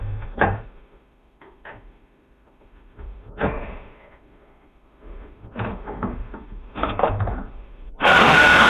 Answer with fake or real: fake